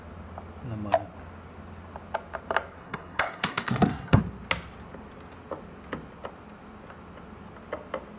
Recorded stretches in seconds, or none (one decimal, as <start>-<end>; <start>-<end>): 0.0-2.8; 4.2-8.2